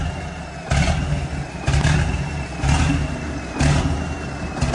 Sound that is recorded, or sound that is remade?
recorded